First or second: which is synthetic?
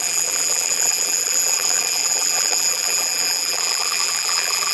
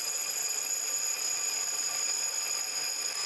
first